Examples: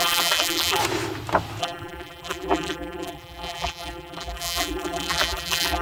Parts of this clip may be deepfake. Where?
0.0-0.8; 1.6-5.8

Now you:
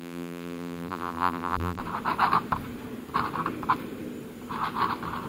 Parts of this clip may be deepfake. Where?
0.0-1.8